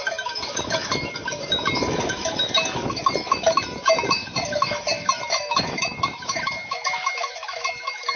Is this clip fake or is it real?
fake